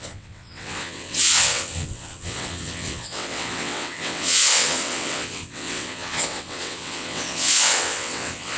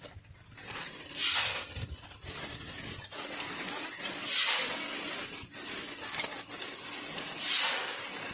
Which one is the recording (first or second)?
second